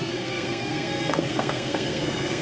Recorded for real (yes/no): no